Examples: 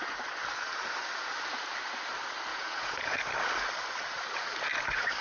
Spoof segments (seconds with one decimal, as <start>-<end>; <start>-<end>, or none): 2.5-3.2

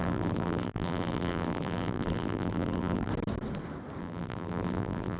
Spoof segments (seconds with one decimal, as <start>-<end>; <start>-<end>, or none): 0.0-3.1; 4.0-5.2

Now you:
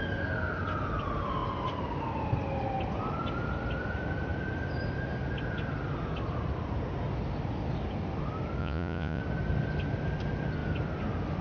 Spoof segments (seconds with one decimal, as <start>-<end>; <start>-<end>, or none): 8.6-9.2

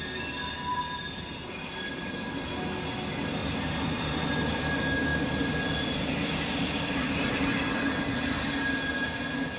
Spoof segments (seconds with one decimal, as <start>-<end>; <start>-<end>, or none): 0.7-1.8; 3.4-4.1

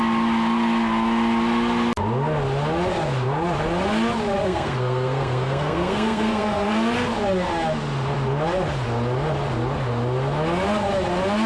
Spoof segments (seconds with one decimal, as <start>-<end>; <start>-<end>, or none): 4.4-6.7